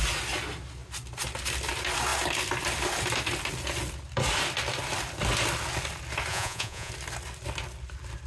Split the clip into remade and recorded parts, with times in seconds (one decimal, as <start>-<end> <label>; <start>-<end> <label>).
0.0-6.3 recorded; 6.3-6.9 remade; 6.9-8.3 recorded

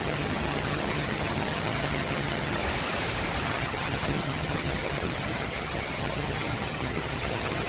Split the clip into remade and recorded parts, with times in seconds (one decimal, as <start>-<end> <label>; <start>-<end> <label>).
0.0-2.6 remade; 2.6-3.4 recorded; 3.4-7.7 remade

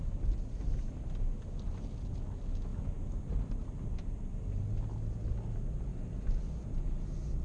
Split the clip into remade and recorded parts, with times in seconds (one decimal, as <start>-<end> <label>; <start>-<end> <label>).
0.0-7.4 recorded

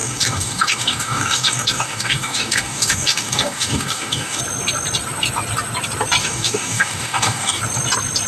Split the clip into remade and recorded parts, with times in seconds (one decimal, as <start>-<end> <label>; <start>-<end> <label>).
0.0-4.4 remade; 4.4-6.2 recorded; 6.2-7.6 remade; 7.6-8.3 recorded

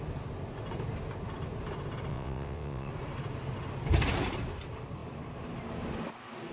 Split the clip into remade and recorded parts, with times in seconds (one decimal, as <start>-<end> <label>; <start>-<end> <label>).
0.0-2.1 recorded; 2.1-2.9 remade; 2.9-6.5 recorded

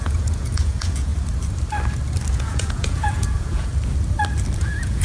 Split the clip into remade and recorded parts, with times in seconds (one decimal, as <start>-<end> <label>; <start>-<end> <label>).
0.0-1.1 remade; 1.1-2.3 recorded; 2.3-3.7 remade; 3.7-4.6 recorded; 4.6-5.0 remade